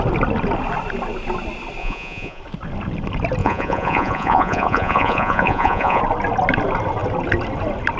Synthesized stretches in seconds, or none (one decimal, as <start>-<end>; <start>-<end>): 1.8-2.4; 3.4-6.0